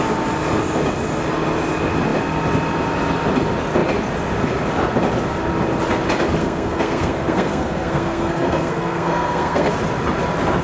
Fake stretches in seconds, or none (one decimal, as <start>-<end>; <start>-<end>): 6.4-9.7